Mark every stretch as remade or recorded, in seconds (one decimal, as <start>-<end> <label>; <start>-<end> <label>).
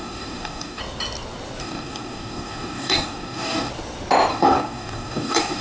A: 0.0-0.8 remade; 0.8-1.6 recorded; 1.6-3.7 remade; 3.7-4.3 recorded; 4.3-5.6 remade